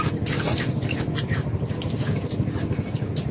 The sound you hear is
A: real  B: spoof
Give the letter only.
A